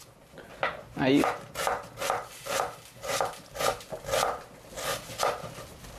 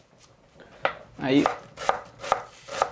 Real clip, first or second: first